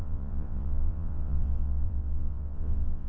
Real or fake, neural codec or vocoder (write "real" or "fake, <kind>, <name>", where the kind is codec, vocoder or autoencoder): fake, vocoder, WaveNeXt